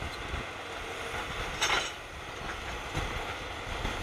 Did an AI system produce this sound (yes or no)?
no